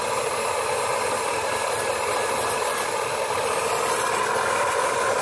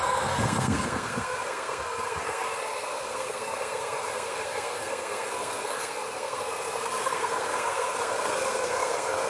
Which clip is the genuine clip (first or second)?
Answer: first